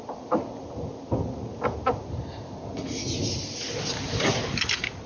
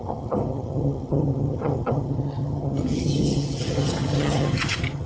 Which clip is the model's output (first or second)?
second